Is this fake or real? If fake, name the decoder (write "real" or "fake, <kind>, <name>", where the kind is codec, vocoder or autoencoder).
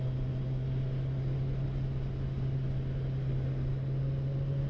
real